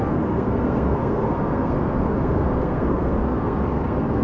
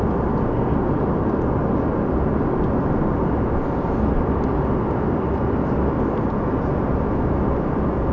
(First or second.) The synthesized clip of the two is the first